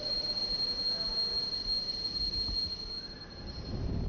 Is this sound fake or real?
real